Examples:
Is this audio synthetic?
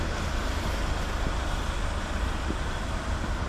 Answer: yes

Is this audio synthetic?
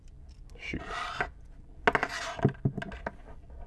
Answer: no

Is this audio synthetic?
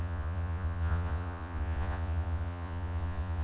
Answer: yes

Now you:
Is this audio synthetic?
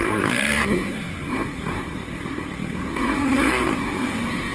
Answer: yes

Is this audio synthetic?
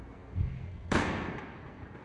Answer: yes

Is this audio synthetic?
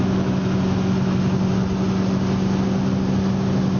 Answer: no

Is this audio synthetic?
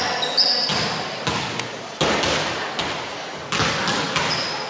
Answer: no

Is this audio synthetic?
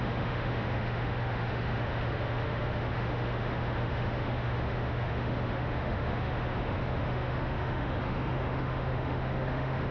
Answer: yes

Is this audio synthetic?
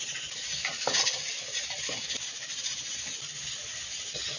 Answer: no